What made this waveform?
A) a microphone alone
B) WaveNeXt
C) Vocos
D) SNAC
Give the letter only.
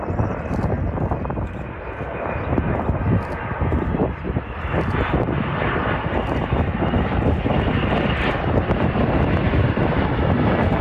A